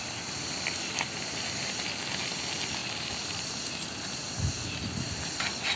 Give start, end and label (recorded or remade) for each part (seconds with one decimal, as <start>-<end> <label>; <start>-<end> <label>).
0.0-5.8 recorded